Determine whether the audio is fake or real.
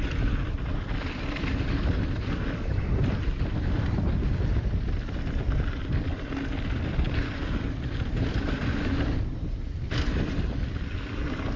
real